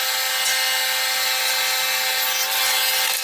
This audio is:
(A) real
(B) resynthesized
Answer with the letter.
A